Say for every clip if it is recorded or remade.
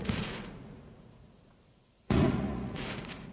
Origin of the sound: remade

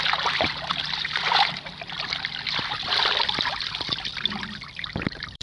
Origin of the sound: remade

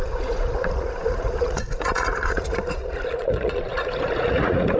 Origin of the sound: remade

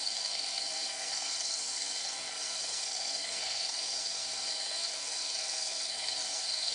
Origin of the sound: remade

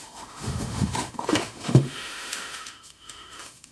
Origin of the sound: remade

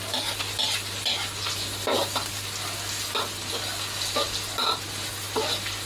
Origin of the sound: recorded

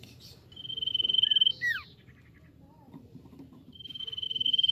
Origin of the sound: remade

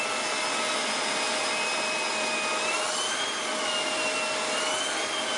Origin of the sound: recorded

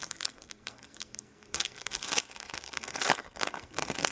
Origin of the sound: remade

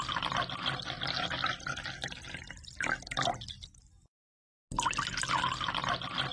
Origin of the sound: recorded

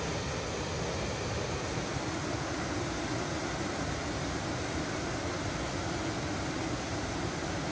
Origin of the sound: recorded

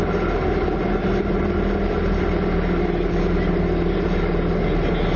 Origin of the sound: recorded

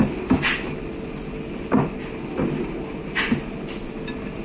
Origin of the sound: recorded